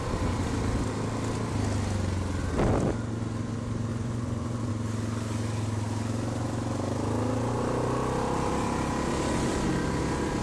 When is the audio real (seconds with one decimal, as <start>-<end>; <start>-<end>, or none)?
0.0-3.9; 4.7-10.4